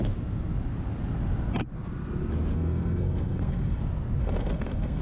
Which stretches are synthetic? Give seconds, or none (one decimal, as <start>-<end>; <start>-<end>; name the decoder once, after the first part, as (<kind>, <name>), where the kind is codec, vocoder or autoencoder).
2.5-3.8 (codec, SNAC); 4.2-5.0